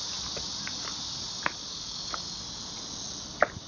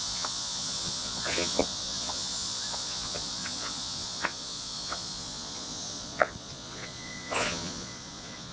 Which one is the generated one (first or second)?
second